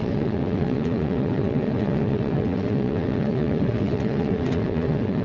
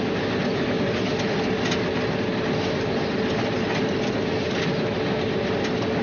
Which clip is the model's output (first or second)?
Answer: first